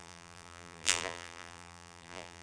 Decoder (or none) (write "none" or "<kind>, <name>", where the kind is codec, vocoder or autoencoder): vocoder, BigVGAN v2